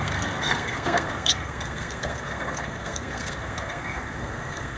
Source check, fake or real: fake